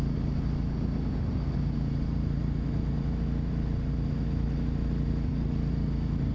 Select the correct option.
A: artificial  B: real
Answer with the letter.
B